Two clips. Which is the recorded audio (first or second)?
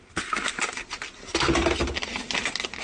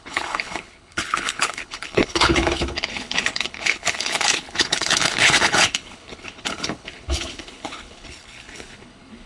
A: first